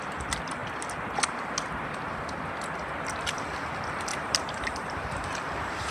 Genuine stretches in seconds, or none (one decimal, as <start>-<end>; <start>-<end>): 0.0-4.1